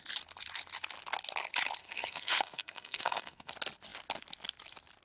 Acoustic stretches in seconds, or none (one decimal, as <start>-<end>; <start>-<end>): 0.0-1.8; 3.5-5.0